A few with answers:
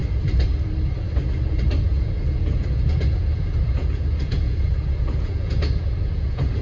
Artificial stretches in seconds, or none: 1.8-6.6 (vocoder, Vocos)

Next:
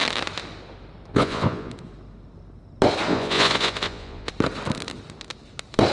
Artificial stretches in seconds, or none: 1.1-1.7 (vocoder, Vocos); 3.1-4.3

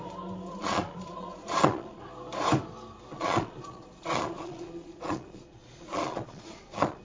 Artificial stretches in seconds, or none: 0.5-2.0 (vocoder, Vocos); 3.1-7.0

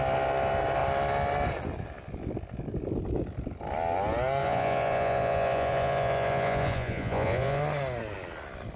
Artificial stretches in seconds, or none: 4.4-7.6 (vocoder, Vocos)

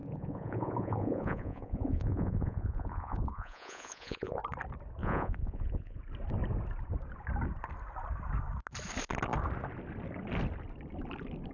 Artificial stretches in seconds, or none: 0.0-4.4 (vocoder, Vocos); 5.0-6.0

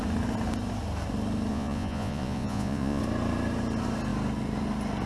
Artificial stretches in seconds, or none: 1.5-3.0 (vocoder, Vocos)